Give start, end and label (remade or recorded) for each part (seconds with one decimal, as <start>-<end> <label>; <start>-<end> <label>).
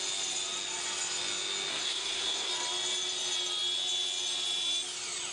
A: 0.0-1.7 recorded; 1.7-2.5 remade; 2.5-5.3 recorded